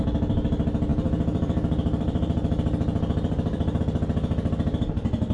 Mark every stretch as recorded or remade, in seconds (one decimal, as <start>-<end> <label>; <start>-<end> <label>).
0.0-0.9 recorded; 0.9-3.8 remade; 3.8-5.3 recorded